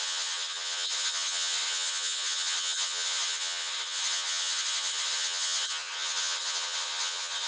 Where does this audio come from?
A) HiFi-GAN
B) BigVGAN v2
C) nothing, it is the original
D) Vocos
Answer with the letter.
A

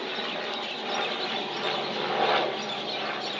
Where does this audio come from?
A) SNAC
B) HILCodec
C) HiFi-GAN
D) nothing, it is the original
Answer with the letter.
D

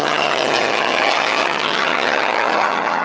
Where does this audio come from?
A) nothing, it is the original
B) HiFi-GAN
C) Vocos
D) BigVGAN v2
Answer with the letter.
B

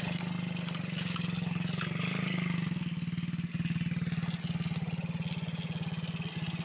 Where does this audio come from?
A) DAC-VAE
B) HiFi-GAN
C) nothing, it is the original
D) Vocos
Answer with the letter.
C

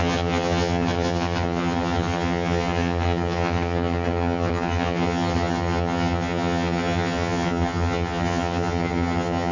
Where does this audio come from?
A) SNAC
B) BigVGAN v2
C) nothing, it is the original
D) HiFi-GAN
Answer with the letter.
D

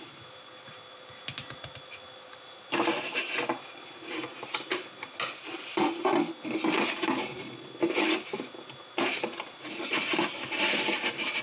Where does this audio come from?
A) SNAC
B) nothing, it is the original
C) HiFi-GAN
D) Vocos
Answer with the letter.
B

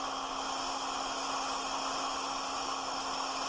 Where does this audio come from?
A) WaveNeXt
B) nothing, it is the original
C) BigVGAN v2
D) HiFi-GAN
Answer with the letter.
B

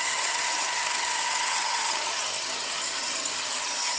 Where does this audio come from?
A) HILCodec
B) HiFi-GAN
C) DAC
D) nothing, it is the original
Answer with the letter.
B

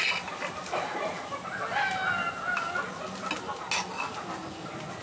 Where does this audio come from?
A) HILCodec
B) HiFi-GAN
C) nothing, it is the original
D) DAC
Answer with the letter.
C